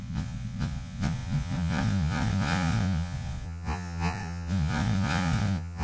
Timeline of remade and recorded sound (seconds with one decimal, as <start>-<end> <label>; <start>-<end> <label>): 0.0-5.8 remade